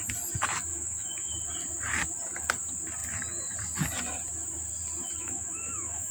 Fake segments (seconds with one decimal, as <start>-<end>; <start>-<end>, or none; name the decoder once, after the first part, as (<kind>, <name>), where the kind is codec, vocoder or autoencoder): 0.7-1.3 (autoencoder, DAC-VAE); 5.2-6.1